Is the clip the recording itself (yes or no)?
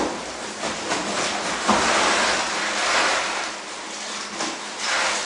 yes